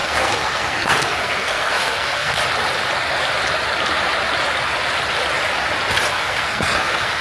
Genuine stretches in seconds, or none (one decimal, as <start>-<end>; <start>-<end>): 2.4-6.1